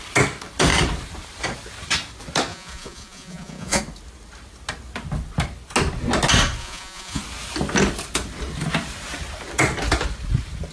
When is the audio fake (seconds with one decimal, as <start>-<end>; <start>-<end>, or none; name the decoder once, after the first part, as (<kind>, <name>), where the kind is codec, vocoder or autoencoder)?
2.5-3.8 (vocoder, Vocos); 6.6-7.2